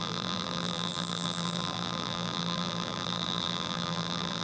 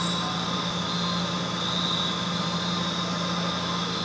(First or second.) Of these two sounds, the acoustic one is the second